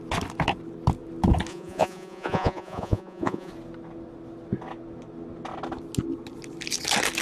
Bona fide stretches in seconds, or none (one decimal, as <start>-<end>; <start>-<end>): 0.0-1.5; 3.5-7.2

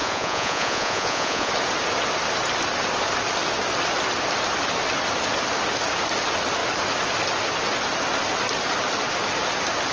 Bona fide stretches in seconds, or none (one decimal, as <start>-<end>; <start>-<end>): 1.5-9.9

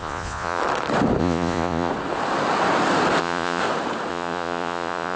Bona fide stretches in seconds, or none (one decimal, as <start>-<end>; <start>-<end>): 0.6-1.2; 1.9-3.2; 3.6-4.1

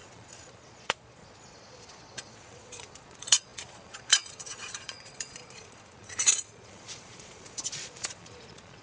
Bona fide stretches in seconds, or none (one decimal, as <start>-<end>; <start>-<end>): none